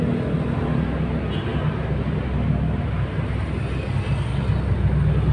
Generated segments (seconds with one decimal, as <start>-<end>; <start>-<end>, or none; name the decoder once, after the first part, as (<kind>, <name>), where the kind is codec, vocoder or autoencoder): none